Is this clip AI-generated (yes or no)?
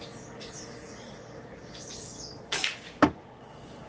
yes